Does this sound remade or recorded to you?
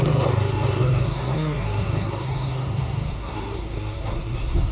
remade